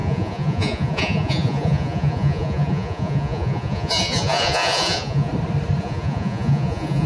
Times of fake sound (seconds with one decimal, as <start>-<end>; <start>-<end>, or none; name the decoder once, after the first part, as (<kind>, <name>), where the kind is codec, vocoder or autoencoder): 0.0-5.3 (vocoder, Vocos); 5.8-7.1

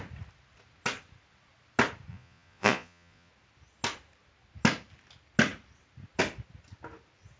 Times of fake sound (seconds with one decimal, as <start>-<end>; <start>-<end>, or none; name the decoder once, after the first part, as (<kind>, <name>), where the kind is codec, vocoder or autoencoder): 2.1-3.3 (vocoder, Vocos)

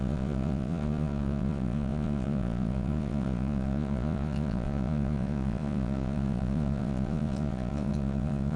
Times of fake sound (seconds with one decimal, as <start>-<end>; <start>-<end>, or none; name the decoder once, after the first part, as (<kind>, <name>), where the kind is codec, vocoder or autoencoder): 0.0-8.6 (vocoder, Vocos)

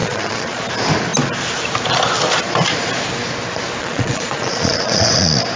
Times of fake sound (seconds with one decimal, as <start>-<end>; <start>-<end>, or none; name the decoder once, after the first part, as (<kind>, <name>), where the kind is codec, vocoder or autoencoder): 0.0-0.6 (vocoder, Vocos); 3.8-5.1

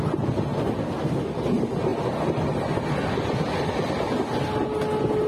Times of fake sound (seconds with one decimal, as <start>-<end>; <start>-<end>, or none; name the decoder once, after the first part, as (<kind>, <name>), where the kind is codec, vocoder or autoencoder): none

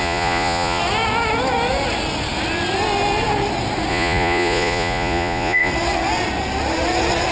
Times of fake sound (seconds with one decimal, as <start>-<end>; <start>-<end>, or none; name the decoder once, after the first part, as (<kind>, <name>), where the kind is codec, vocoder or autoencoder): 0.0-0.8 (vocoder, Vocos); 3.9-5.7

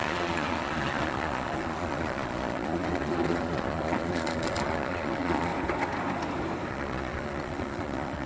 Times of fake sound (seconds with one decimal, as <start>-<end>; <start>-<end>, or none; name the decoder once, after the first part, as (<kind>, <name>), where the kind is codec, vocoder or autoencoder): 0.0-5.5 (vocoder, Vocos); 6.7-8.3

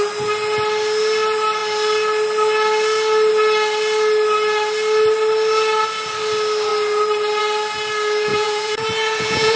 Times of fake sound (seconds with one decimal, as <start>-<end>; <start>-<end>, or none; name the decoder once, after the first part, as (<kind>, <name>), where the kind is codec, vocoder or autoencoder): 8.3-9.6 (vocoder, Vocos)